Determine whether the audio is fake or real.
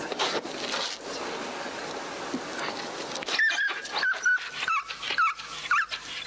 real